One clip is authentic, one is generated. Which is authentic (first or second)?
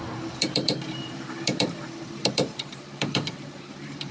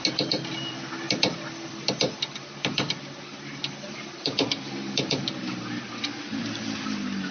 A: second